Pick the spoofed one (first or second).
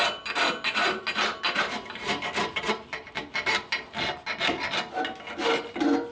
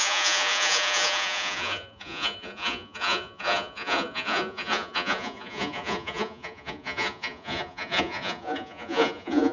second